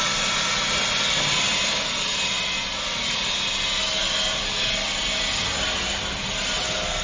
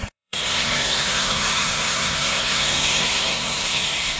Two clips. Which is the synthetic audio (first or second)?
second